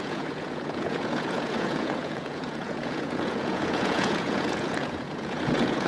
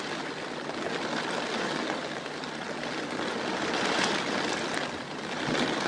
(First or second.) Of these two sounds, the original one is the second